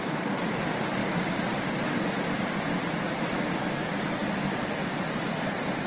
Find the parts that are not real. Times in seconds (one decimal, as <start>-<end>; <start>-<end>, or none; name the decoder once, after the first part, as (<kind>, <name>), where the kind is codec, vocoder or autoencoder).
0.0-5.9 (vocoder, BigVGAN v2)